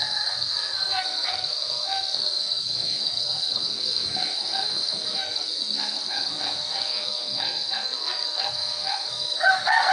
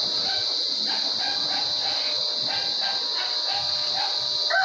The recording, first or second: second